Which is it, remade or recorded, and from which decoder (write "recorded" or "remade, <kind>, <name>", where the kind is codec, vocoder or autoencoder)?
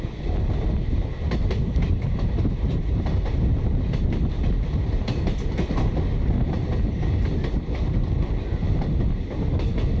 recorded